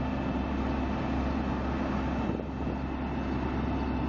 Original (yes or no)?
yes